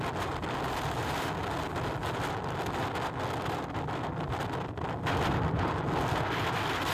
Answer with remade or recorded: recorded